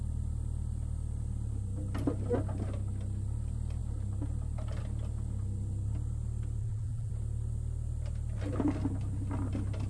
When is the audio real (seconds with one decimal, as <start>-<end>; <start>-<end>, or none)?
0.0-6.6; 7.1-9.9